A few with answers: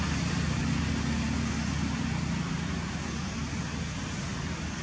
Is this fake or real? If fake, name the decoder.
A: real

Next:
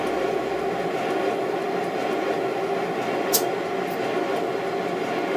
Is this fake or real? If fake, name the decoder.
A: real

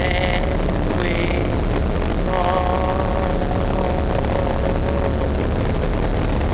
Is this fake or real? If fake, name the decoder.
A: real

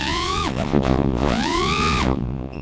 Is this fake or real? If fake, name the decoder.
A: fake, vocoder, Vocos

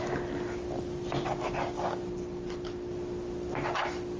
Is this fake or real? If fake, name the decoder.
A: real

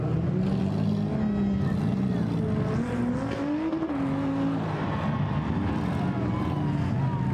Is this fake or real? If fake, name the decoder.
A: real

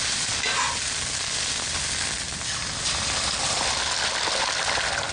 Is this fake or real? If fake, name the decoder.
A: real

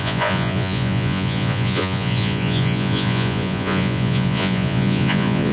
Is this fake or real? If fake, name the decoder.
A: fake, vocoder, Vocos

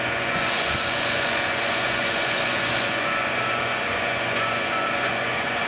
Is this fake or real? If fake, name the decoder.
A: fake, vocoder, Vocos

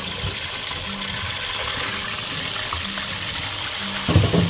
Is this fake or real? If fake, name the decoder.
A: real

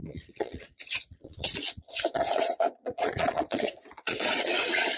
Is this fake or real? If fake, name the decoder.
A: fake, vocoder, Vocos